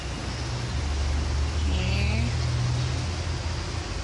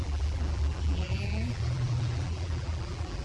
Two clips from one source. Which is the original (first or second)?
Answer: first